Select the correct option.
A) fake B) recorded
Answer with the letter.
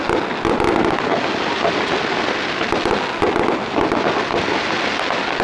B